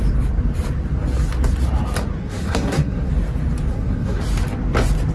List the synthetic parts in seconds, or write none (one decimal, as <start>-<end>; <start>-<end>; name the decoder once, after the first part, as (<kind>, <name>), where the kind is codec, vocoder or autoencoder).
2.2-3.1 (codec, SNAC); 3.7-4.2